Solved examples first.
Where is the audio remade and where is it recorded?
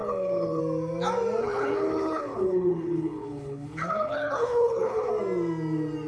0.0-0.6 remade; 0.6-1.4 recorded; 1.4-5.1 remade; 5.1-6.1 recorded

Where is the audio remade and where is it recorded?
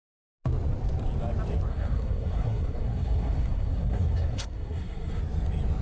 0.0-1.7 recorded; 1.7-5.2 remade; 5.2-5.8 recorded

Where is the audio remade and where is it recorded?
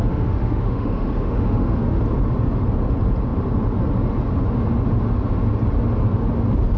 0.0-2.0 remade; 2.0-6.8 recorded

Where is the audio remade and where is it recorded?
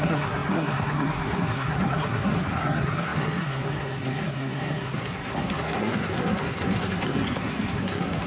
0.0-8.3 remade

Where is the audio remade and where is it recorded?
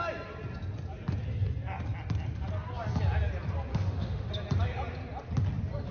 0.0-3.7 recorded; 3.7-4.3 remade; 4.3-5.9 recorded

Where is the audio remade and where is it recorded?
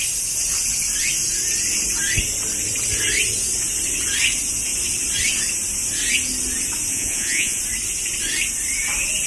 0.0-6.9 recorded; 6.9-7.6 remade; 7.6-9.3 recorded